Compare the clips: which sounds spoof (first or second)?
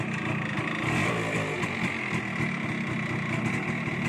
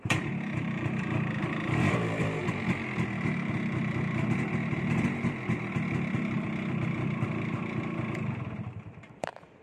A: second